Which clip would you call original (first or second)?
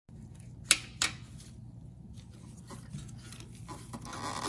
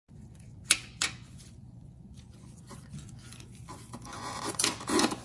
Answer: first